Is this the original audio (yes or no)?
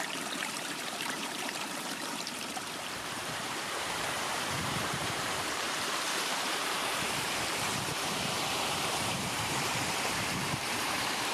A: no